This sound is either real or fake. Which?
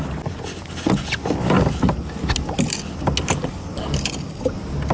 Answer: real